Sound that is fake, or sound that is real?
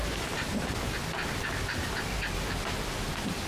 real